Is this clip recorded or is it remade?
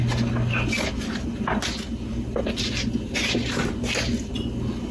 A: recorded